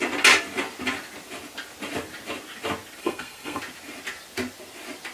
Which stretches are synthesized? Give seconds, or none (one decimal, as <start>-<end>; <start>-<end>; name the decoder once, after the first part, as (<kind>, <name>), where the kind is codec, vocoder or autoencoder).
3.0-3.6 (codec, SNAC)

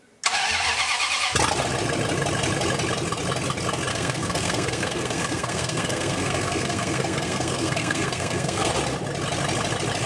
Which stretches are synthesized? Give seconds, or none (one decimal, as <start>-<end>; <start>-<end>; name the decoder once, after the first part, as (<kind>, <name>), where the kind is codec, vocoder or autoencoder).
3.9-8.7 (codec, SNAC)

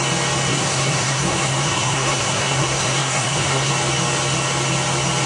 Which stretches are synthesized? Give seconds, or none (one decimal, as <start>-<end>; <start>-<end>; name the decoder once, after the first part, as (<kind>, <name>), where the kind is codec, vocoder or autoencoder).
0.5-3.7 (codec, SNAC)

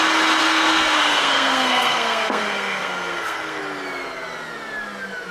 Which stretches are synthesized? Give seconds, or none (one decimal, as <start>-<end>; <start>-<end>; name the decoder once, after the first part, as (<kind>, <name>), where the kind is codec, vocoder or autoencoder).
0.4-3.6 (codec, SNAC)

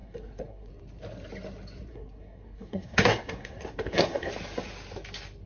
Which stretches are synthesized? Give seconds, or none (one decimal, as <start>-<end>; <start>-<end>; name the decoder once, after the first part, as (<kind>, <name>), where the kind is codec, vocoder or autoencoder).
0.0-0.7 (codec, SNAC); 1.9-4.3

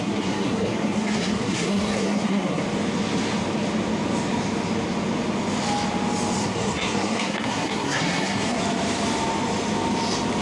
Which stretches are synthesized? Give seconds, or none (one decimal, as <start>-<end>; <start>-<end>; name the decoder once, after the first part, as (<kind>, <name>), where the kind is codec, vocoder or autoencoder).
0.0-2.6 (codec, SNAC); 6.4-8.6

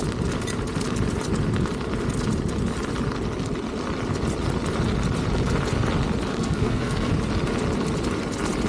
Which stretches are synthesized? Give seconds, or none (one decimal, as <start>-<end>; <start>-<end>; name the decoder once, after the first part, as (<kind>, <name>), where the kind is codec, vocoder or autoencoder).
6.3-7.1 (codec, SNAC)

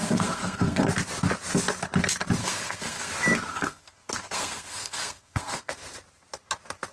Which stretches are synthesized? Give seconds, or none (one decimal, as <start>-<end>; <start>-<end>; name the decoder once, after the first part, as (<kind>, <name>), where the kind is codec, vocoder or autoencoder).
0.0-0.9 (codec, SNAC); 2.4-3.1; 3.5-5.7